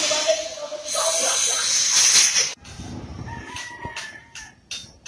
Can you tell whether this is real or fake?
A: real